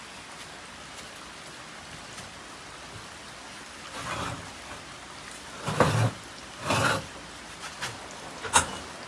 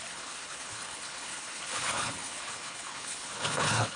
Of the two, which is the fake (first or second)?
second